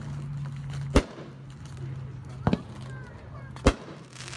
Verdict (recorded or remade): recorded